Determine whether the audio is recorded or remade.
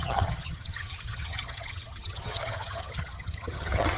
remade